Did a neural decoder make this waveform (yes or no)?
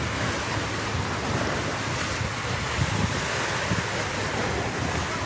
no